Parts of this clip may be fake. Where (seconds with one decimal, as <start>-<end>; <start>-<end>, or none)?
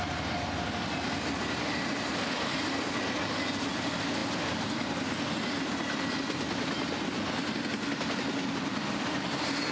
none